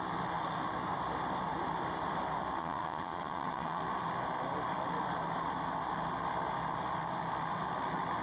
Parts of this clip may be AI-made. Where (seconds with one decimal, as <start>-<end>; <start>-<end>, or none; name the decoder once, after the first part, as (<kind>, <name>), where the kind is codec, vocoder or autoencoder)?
2.6-3.8 (vocoder, Vocos)